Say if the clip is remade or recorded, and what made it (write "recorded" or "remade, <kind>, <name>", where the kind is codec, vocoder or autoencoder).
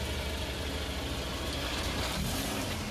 recorded